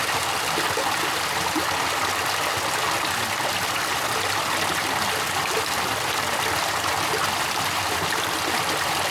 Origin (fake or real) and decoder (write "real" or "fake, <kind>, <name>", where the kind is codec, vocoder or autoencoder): real